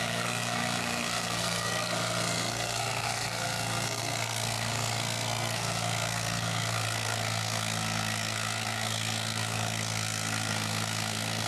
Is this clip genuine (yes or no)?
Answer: no